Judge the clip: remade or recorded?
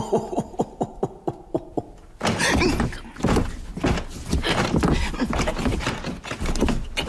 recorded